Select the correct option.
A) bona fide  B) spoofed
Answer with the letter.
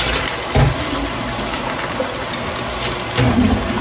A